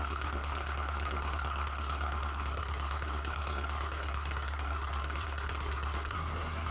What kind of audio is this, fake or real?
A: fake